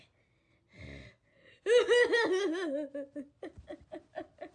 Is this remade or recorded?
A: recorded